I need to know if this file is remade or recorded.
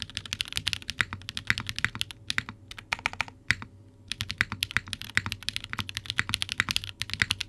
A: recorded